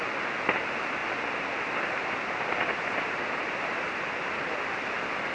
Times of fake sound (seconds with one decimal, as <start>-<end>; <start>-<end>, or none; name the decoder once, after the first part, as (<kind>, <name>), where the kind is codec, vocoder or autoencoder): none